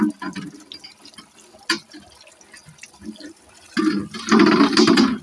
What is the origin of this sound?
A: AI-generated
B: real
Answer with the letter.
B